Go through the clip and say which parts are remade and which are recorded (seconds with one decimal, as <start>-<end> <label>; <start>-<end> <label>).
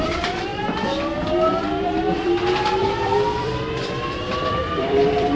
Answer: 0.0-0.5 remade; 0.5-1.5 recorded; 1.5-5.4 remade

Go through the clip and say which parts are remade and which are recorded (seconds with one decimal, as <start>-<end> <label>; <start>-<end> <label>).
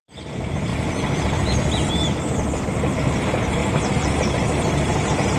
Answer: 0.0-0.7 remade; 0.7-1.9 recorded; 1.9-5.4 remade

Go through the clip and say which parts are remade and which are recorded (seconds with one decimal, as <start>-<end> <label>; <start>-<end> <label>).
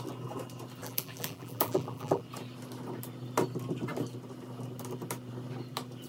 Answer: 0.0-0.8 recorded; 0.8-2.2 remade; 2.2-6.1 recorded